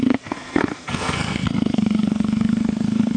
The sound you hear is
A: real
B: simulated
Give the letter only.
B